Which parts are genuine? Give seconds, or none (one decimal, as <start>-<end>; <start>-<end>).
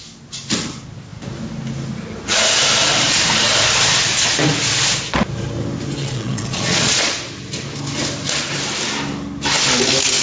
0.0-6.0; 7.3-10.2